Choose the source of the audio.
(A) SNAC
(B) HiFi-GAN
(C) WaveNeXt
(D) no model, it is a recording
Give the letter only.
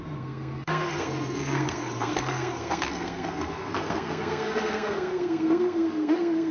A